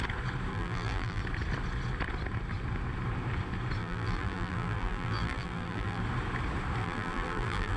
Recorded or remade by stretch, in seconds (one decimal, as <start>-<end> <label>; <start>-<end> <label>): 0.0-0.5 recorded; 0.5-1.2 remade; 1.2-3.8 recorded; 3.8-6.0 remade; 6.0-6.8 recorded; 6.8-7.8 remade